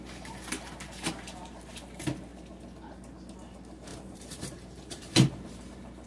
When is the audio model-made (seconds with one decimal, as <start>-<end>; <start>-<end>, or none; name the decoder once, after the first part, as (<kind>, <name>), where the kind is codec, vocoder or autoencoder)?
3.9-6.1 (vocoder, BigVGAN v2)